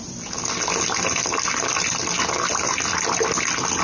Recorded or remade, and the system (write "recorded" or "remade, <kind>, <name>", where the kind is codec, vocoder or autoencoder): recorded